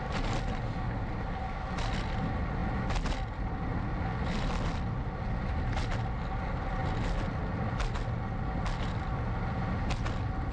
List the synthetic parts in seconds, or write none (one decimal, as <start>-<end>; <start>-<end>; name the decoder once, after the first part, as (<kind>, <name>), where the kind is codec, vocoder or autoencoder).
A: none